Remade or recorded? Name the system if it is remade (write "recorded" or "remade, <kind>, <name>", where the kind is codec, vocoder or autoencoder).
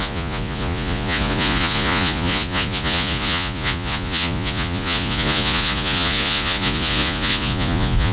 remade, vocoder, Vocos